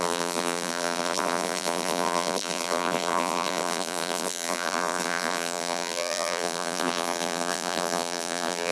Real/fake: fake